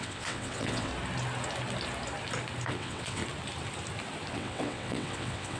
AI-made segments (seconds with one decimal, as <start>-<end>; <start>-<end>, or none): 0.0-0.9; 2.7-3.2; 4.3-5.6